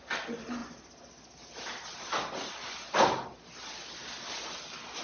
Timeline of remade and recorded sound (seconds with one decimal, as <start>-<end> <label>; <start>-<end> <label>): 0.0-5.0 recorded